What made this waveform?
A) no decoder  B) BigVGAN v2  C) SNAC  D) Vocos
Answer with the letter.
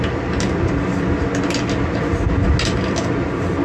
A